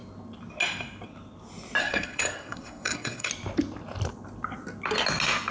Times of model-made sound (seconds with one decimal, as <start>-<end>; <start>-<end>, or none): 1.8-3.3